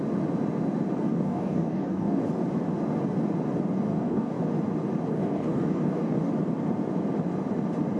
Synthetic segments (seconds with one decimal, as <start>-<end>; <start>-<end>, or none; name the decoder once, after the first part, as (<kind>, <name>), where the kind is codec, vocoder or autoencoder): 1.1-2.2 (codec, DAC); 3.9-4.4; 5.1-6.3